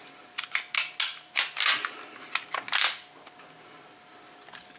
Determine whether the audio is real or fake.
real